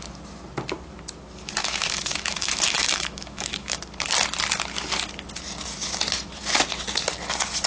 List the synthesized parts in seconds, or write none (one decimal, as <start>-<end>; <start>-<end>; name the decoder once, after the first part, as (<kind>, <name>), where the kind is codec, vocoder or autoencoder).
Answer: 1.6-3.8 (autoencoder, DAC-VAE)